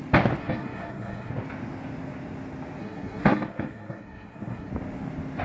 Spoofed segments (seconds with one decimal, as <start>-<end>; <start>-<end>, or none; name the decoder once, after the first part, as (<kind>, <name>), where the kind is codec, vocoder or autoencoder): 0.4-1.3 (codec, SNAC); 2.8-4.7